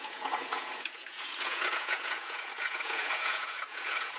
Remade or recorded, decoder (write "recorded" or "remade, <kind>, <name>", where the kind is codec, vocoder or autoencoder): remade, vocoder, Vocos